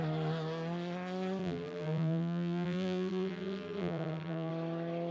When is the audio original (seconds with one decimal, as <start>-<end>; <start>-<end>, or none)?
0.0-1.4; 4.5-5.1

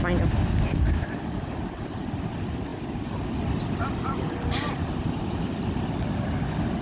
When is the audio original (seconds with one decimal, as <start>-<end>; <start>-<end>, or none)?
0.0-2.7; 6.3-6.8

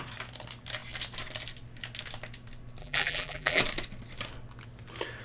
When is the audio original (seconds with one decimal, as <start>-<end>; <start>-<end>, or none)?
0.0-2.8; 3.6-5.2

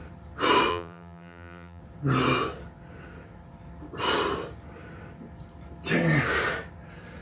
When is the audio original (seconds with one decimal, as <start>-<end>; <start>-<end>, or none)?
0.0-0.7; 1.8-7.2

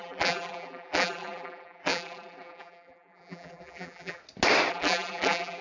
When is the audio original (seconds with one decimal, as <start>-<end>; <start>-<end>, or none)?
4.2-4.7

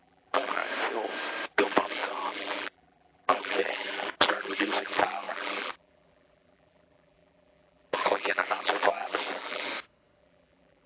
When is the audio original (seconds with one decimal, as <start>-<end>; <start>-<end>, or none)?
0.6-1.5; 9.7-10.2